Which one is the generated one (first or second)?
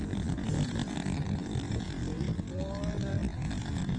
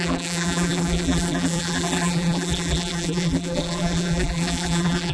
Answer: second